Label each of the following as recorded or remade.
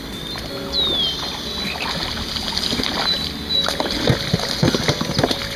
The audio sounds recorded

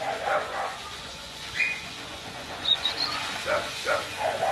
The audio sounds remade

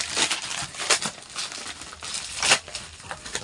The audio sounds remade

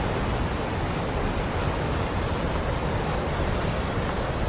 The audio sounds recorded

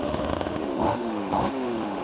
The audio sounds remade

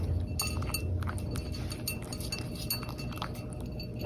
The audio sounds recorded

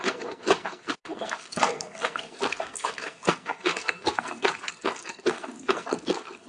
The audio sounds remade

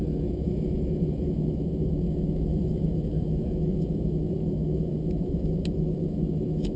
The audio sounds remade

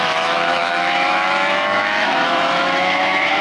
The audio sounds remade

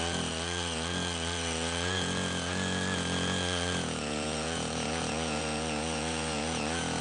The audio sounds remade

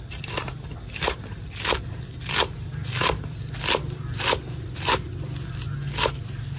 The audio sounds recorded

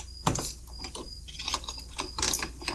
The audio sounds recorded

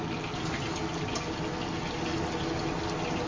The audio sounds recorded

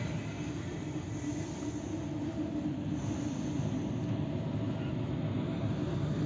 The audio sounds recorded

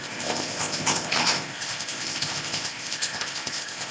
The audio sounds remade